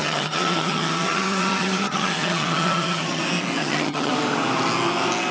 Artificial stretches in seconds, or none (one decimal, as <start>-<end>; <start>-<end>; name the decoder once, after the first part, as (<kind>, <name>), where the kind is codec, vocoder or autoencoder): 0.0-3.2 (vocoder, HiFi-GAN); 3.6-4.1